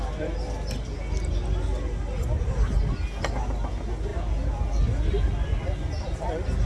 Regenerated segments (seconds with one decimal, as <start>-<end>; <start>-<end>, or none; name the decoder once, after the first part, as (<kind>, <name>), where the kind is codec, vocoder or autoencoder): none